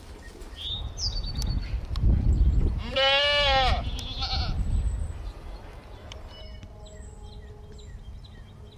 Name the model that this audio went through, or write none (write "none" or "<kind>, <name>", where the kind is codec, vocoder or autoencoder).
none